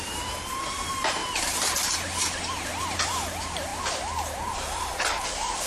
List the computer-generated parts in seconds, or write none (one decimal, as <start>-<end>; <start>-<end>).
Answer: 0.0-1.2; 1.9-5.7